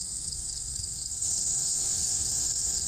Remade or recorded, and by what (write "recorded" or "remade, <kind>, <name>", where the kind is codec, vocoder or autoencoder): remade, codec, SNAC